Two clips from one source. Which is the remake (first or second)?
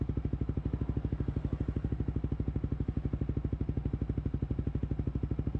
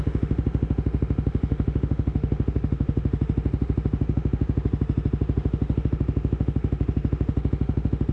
second